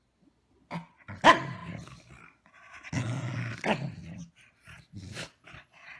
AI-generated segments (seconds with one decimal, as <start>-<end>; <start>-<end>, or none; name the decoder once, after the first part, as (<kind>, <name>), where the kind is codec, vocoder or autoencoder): 4.9-6.0 (vocoder, Vocos)